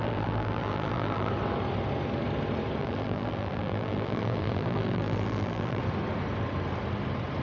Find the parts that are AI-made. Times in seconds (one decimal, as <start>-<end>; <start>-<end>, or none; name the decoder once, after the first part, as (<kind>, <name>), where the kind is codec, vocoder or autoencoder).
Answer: 0.0-1.3 (vocoder, BigVGAN v2); 2.8-5.8